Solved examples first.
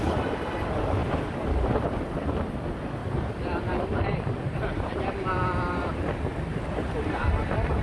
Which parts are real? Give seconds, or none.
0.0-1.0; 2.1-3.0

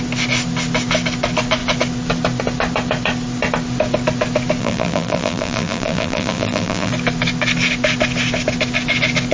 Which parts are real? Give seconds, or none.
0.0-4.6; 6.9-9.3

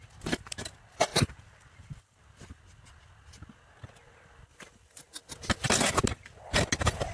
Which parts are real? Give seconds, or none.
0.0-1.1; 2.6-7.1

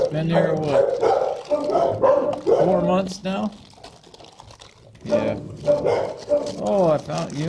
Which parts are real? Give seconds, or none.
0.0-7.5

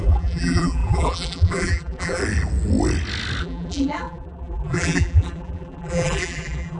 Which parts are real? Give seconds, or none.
2.2-3.4

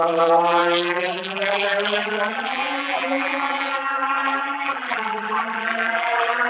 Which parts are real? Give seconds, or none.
none